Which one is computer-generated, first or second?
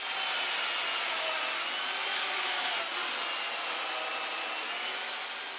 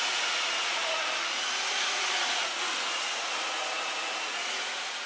second